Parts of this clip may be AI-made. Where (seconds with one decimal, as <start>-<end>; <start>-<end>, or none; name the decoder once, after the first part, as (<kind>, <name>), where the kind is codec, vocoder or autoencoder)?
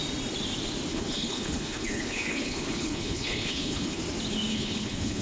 0.9-4.0 (codec, HILCodec); 4.5-5.2